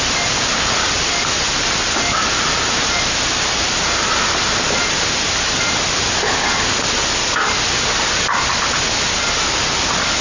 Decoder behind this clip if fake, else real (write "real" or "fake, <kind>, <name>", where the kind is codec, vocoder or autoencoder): real